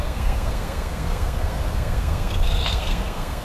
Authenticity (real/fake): fake